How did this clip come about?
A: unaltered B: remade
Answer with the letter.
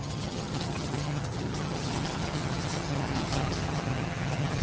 B